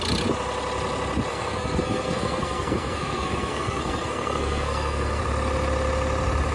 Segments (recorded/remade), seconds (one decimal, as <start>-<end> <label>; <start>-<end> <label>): 0.0-1.3 recorded; 1.3-5.2 remade; 5.2-6.5 recorded